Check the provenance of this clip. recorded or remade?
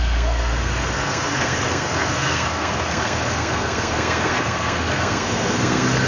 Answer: remade